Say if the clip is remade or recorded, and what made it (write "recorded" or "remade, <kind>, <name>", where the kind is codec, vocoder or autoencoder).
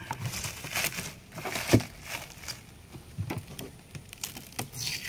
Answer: recorded